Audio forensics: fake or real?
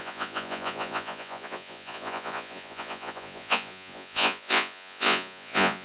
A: fake